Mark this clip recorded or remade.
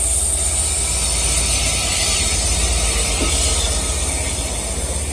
recorded